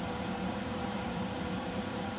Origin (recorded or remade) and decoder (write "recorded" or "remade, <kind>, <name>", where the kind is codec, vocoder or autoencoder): remade, vocoder, BigVGAN v2